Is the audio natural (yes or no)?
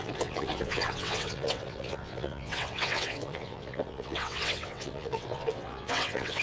no